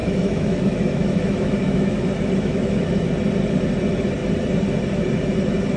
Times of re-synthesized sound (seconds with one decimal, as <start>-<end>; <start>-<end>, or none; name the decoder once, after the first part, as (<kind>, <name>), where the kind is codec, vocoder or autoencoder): 0.0-3.0 (autoencoder, DAC-VAE)